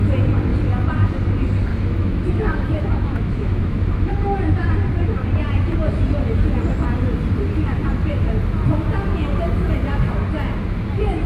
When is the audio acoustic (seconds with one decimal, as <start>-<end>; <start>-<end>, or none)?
0.0-1.7; 4.1-11.3